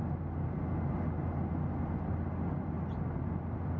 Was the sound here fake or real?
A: real